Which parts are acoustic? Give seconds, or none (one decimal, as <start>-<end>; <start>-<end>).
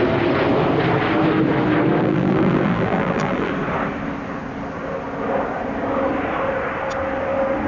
0.0-2.0; 3.5-7.7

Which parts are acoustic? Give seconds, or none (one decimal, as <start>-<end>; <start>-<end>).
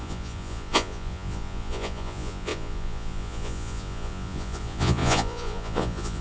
none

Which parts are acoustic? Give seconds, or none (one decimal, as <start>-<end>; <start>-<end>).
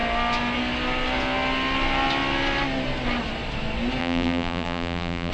0.0-4.0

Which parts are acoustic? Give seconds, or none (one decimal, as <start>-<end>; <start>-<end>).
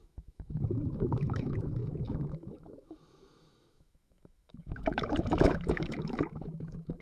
none